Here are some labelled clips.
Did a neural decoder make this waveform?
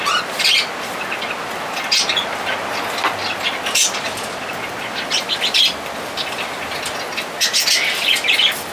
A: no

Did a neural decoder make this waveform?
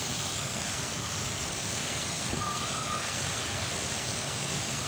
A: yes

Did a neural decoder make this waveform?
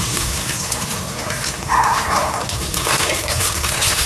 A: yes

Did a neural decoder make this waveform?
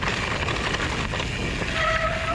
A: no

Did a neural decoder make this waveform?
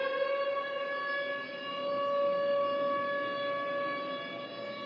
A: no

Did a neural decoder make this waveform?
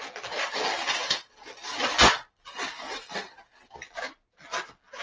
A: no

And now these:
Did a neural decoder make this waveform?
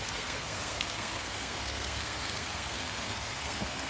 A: yes